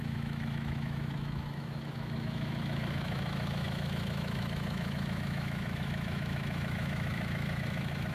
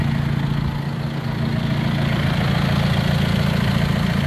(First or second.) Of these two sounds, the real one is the second